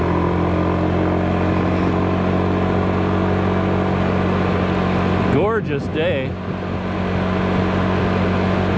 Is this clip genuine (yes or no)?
yes